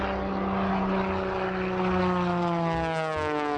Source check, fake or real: real